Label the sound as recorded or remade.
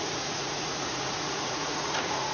remade